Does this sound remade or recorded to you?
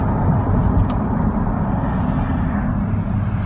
recorded